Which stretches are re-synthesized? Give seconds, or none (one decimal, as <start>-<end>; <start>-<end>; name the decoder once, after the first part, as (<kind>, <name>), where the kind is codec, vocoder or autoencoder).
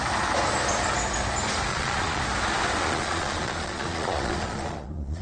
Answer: 1.7-2.2 (vocoder, Vocos); 2.8-5.2